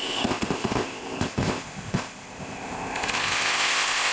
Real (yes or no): no